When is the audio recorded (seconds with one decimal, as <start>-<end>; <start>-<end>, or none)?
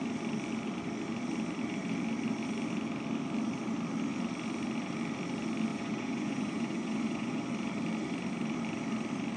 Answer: 0.0-5.7; 7.4-9.4